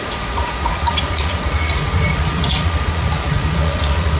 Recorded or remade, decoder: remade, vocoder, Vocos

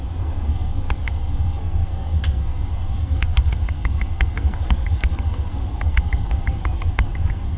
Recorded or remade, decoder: remade, codec, SNAC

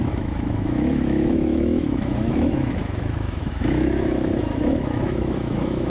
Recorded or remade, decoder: remade, autoencoder, DAC-VAE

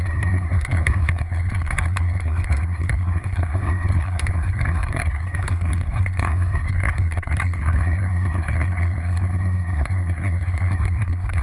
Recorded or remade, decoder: remade, codec, SNAC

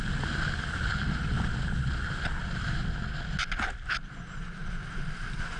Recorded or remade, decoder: recorded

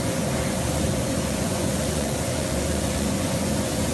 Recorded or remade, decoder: remade, vocoder, Vocos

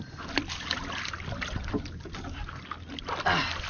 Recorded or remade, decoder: recorded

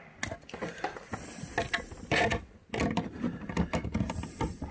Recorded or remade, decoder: recorded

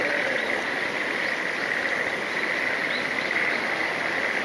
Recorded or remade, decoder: recorded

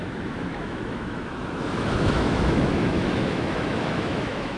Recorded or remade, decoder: remade, autoencoder, DAC-VAE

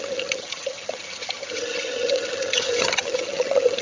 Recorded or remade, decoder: remade, vocoder, HiFi-GAN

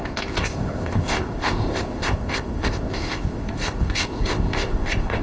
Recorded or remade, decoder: remade, codec, ZipCodec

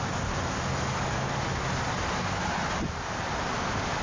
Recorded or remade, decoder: recorded